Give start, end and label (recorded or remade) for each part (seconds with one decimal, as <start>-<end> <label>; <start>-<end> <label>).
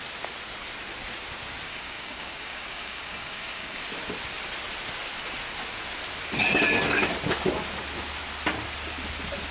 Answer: 0.0-1.7 recorded; 1.7-3.8 remade; 3.8-9.5 recorded